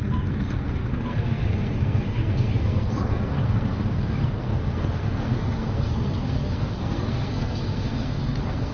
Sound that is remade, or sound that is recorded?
remade